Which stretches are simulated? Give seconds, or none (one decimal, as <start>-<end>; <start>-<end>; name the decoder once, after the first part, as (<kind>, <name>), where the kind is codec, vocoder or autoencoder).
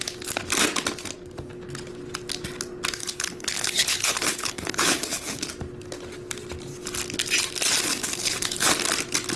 3.0-5.5 (codec, HILCodec); 7.9-8.7